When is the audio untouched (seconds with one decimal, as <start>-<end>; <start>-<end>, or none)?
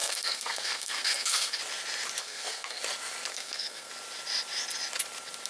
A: 1.6-2.2; 2.8-3.3; 3.9-5.5